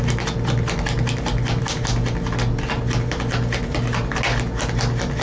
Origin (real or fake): real